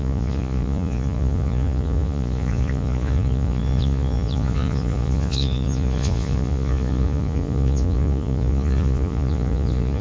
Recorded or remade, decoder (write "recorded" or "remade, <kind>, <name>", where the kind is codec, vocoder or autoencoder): remade, vocoder, Vocos